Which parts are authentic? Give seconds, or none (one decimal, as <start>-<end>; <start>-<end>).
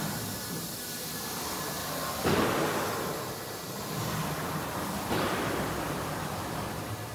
0.0-5.3